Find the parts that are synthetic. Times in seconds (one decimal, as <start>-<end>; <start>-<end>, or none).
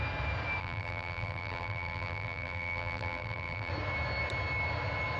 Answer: 0.6-3.7